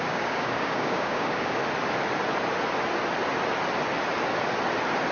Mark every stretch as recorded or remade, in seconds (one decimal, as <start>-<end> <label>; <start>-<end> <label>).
0.0-1.6 remade; 1.6-5.1 recorded